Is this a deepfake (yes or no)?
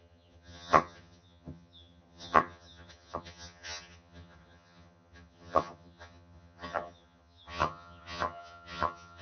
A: yes